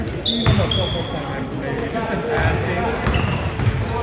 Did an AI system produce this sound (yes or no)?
no